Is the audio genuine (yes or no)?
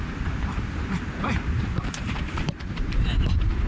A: no